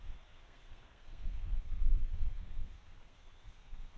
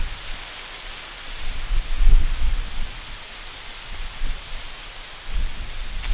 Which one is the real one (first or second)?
second